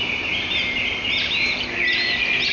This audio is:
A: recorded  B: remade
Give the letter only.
A